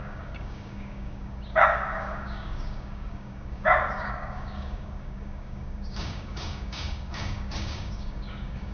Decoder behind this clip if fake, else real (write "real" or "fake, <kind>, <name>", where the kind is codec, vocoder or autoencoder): fake, codec, DAC